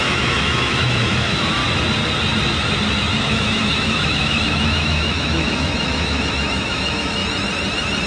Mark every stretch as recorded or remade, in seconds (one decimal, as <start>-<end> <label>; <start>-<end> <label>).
0.0-1.6 remade; 1.6-3.2 recorded; 3.2-7.2 remade; 7.2-8.1 recorded